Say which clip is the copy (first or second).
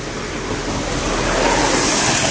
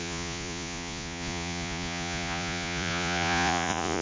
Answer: second